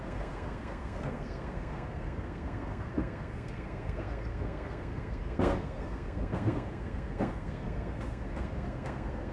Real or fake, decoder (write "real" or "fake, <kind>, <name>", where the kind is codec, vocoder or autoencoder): fake, codec, SNAC